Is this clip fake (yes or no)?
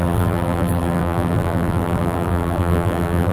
yes